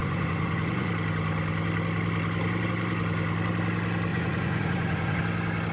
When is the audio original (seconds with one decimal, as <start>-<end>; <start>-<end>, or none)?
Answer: 0.9-4.1; 5.2-5.7

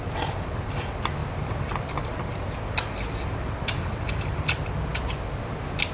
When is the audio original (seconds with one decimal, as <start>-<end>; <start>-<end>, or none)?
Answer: 0.0-5.9

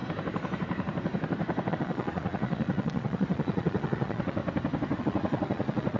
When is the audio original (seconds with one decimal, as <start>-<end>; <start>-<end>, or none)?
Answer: 0.0-1.7; 4.4-5.0

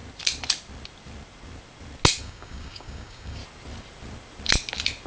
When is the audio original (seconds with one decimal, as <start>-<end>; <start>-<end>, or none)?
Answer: 0.0-2.2; 3.4-5.1

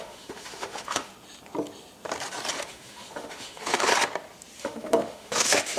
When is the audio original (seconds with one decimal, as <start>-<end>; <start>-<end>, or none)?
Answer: 1.1-2.5; 3.9-4.6